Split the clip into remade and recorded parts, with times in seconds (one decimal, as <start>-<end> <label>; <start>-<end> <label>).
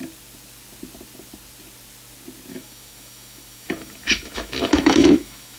0.0-2.5 recorded; 2.5-5.6 remade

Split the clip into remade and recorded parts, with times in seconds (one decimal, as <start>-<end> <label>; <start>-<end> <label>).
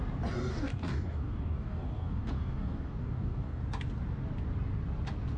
0.0-0.5 recorded; 0.5-3.6 remade; 3.6-5.4 recorded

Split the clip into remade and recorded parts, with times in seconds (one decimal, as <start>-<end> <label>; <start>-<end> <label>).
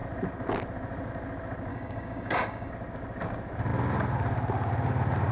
0.0-1.7 recorded; 1.7-2.7 remade; 2.7-5.3 recorded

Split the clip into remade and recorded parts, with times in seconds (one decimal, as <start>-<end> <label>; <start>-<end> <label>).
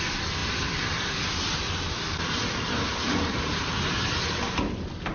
0.0-0.4 recorded; 0.4-1.8 remade; 1.8-2.9 recorded; 2.9-3.5 remade; 3.5-5.1 recorded